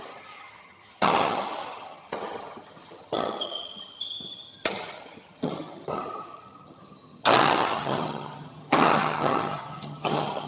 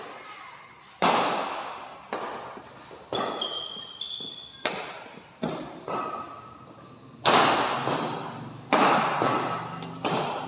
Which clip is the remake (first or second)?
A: first